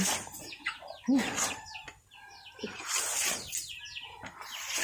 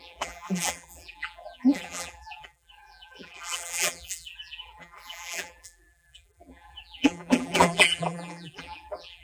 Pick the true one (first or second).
first